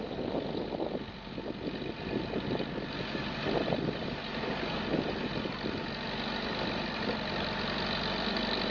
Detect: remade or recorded recorded